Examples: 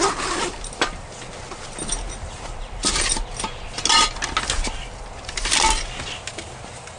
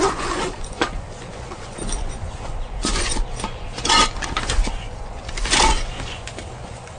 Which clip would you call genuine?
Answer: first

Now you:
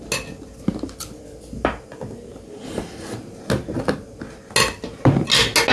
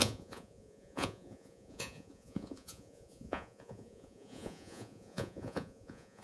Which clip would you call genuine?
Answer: first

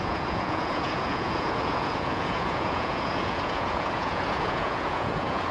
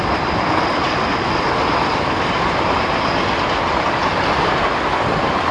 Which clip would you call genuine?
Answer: second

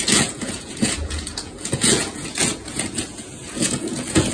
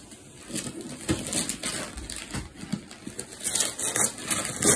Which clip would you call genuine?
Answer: second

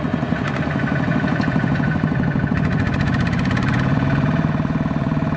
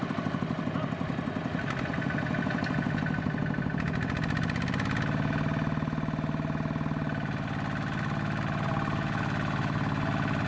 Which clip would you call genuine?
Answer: second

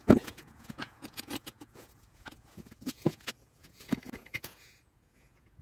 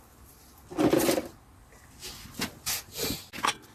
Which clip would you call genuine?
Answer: second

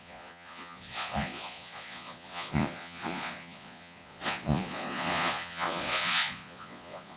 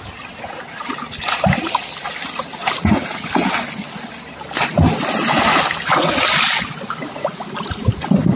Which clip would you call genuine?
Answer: second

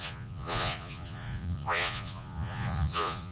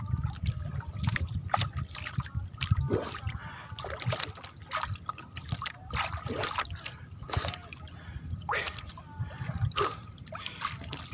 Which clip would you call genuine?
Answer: second